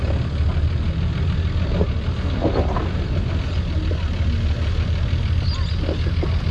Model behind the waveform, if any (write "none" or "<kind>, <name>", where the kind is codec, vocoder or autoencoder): none